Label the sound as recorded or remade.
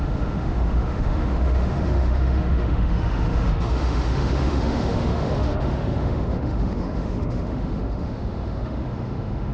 remade